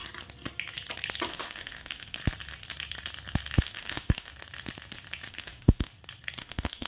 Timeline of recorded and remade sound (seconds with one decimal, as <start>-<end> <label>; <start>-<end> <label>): 0.0-1.3 recorded; 1.3-2.2 remade; 2.2-3.6 recorded; 3.6-4.3 remade; 4.3-5.3 recorded; 5.3-5.9 remade; 5.9-6.4 recorded; 6.4-6.9 remade

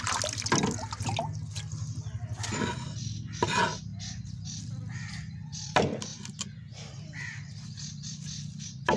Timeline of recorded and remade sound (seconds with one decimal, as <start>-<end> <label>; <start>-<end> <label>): 0.0-9.0 recorded

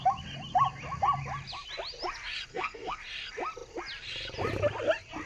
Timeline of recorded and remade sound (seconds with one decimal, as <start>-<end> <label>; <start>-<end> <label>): 0.0-2.5 recorded; 2.5-3.0 remade; 3.0-5.3 recorded

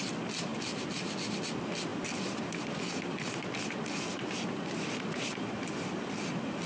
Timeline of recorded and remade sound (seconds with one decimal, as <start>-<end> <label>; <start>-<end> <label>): 0.0-6.7 recorded

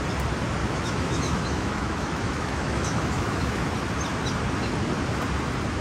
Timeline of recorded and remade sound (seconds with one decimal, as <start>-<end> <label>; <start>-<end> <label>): 0.0-0.6 recorded; 0.6-3.7 remade; 3.7-5.8 recorded